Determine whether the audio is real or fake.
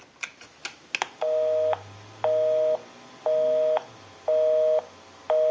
real